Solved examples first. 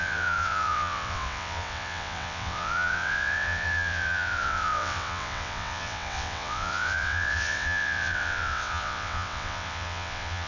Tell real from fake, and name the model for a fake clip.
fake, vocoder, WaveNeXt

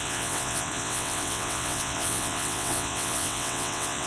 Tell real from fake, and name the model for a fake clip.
fake, vocoder, WaveNeXt